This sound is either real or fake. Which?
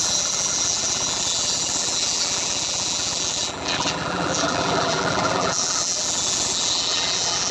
fake